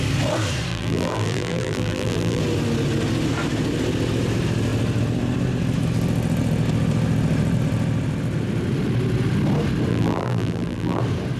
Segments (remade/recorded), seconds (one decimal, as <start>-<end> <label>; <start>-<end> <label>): 0.0-0.7 recorded; 0.7-2.4 remade; 2.4-9.9 recorded; 9.9-11.0 remade; 11.0-11.4 recorded